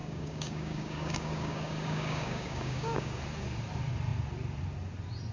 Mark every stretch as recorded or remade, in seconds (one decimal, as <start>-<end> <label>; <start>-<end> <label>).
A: 0.0-3.2 remade; 3.2-5.3 recorded